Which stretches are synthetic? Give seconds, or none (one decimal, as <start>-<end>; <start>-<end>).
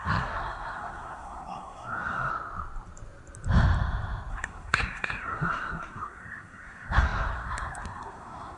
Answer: 0.0-2.3; 4.3-8.6